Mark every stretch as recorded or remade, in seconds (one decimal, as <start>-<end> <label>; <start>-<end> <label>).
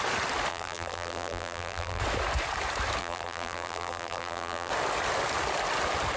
0.0-0.5 recorded; 0.5-2.0 remade; 2.0-3.0 recorded; 3.0-4.7 remade; 4.7-6.2 recorded